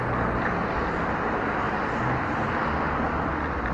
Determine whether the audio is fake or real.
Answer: real